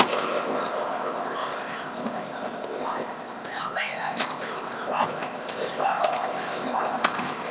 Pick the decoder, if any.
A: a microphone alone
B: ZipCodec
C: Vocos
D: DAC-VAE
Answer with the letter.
B